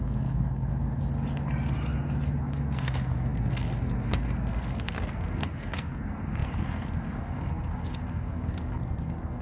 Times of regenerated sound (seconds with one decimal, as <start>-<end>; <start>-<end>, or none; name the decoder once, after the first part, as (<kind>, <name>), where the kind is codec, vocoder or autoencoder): 0.0-0.7 (codec, SNAC); 2.4-9.4